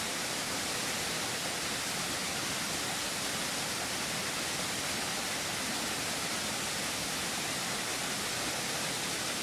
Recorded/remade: recorded